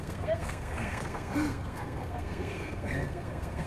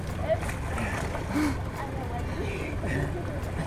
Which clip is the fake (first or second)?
first